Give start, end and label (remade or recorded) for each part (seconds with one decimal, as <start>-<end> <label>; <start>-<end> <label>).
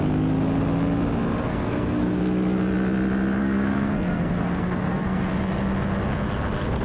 0.0-1.5 recorded; 1.5-2.2 remade; 2.2-3.4 recorded; 3.4-5.3 remade; 5.3-6.8 recorded